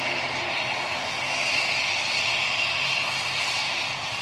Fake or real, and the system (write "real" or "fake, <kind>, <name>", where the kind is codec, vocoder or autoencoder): real